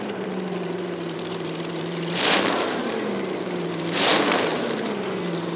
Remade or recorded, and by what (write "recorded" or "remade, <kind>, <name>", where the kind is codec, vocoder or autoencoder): remade, vocoder, BigVGAN v2